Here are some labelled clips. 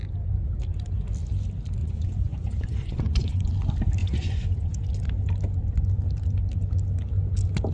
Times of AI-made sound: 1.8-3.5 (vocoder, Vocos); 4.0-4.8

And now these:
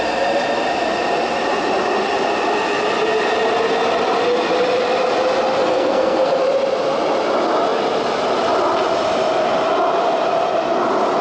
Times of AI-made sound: 5.6-6.4 (codec, SNAC)

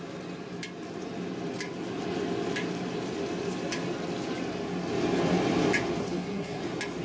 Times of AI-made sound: 6.0-6.6 (codec, SNAC)